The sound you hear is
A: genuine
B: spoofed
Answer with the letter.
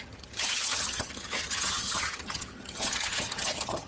B